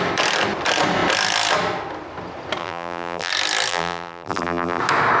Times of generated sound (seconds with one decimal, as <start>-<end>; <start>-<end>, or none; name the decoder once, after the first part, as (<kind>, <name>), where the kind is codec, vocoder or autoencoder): 2.6-3.3 (vocoder, BigVGAN v2); 3.7-4.8